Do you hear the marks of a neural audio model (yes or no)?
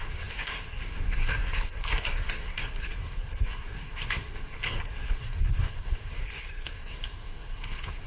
yes